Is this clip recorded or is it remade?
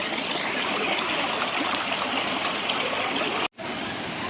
recorded